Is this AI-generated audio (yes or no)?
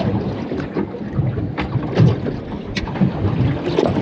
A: no